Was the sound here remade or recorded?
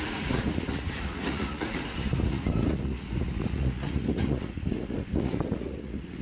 remade